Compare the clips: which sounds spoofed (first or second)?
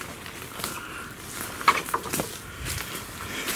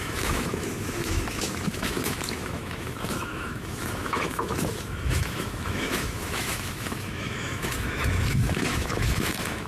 second